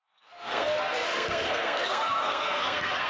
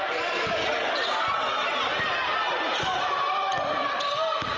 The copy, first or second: first